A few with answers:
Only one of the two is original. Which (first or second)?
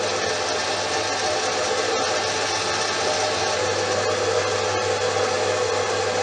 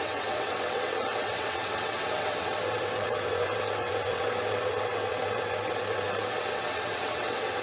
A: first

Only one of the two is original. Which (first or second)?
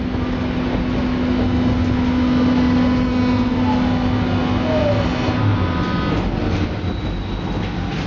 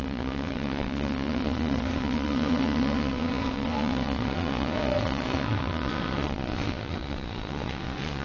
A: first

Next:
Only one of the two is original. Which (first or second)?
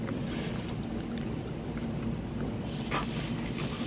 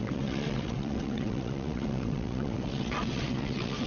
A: first